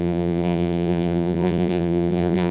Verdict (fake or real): fake